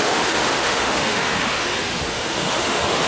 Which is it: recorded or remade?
remade